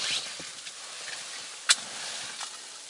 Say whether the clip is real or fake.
real